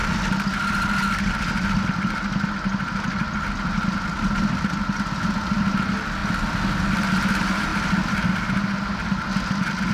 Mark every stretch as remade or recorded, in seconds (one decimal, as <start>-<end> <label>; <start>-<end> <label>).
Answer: 0.0-9.9 recorded